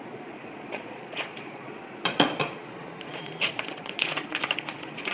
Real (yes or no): no